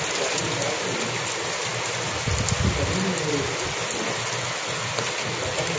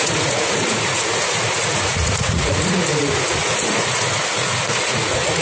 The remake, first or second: second